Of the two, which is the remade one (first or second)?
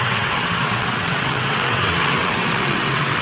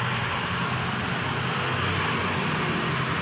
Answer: first